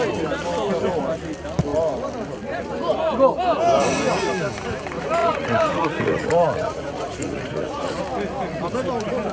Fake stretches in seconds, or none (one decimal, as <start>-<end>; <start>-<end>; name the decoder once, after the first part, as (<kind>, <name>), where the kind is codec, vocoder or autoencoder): 5.2-8.0 (vocoder, Vocos)